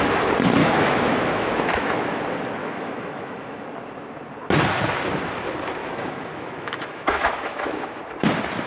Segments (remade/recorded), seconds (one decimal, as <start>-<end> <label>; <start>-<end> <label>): 0.0-0.6 recorded; 0.6-2.2 remade; 2.2-2.6 recorded; 2.6-3.6 remade; 3.6-5.8 recorded; 5.8-8.0 remade; 8.0-8.7 recorded